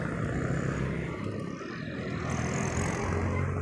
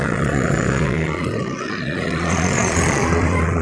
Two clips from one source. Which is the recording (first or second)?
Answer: first